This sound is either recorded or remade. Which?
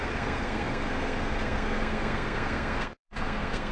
remade